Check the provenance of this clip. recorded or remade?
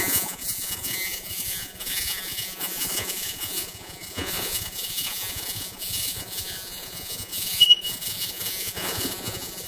remade